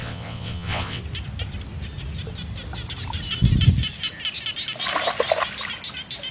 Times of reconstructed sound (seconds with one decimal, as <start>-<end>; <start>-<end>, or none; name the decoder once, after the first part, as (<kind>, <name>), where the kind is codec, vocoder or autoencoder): 0.0-1.0 (vocoder, WaveNeXt)